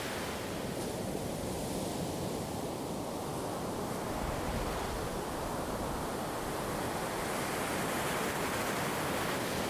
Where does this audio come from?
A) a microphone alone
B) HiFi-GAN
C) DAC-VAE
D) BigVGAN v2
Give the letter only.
A